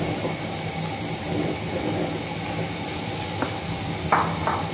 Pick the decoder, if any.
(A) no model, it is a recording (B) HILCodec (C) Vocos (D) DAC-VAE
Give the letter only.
A